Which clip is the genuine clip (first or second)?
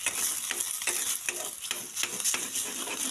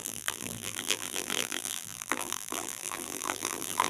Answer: first